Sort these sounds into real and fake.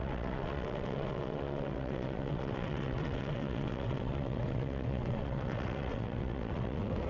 fake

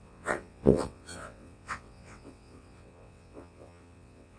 fake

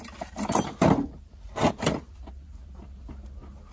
real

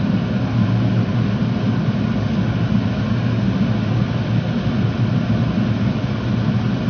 real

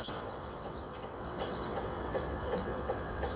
fake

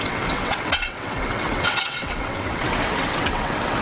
fake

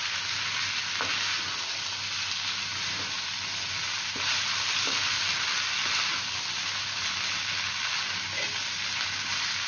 real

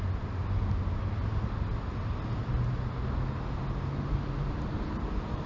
real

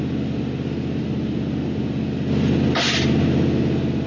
real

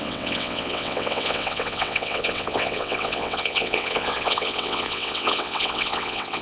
fake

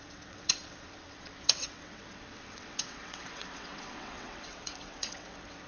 fake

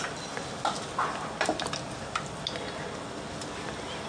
real